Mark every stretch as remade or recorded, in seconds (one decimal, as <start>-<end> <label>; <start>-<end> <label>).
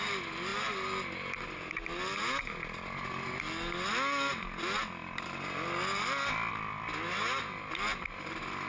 0.0-8.7 recorded